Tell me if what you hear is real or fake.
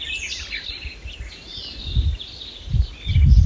real